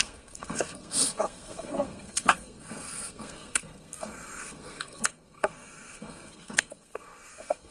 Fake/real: fake